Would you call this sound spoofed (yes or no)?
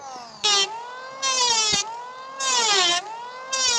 no